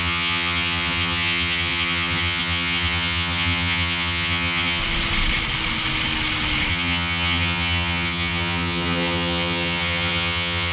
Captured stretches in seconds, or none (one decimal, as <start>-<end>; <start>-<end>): 4.8-6.7